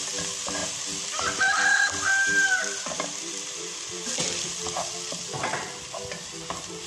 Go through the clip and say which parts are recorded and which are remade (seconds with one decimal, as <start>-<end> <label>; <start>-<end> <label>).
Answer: 0.0-0.6 recorded; 0.6-4.1 remade; 4.1-6.9 recorded